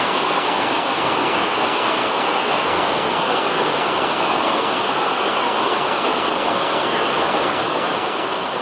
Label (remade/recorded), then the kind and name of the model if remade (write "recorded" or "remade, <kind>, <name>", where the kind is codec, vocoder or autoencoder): remade, codec, SNAC